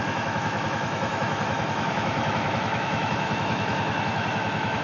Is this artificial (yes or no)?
yes